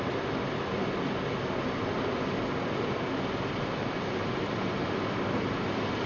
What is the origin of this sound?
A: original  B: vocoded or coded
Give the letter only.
A